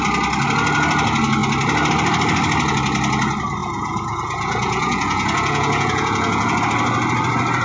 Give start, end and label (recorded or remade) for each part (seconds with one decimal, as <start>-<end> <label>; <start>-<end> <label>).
0.0-3.6 recorded; 3.6-6.6 remade; 6.6-7.6 recorded